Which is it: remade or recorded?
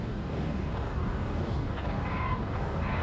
remade